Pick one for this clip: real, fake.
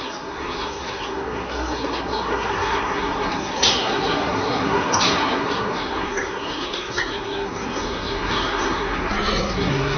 fake